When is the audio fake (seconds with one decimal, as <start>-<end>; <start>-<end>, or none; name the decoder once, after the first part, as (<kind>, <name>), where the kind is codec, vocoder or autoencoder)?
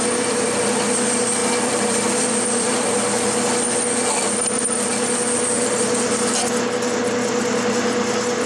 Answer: 1.4-2.9 (vocoder, BigVGAN v2); 4.9-5.8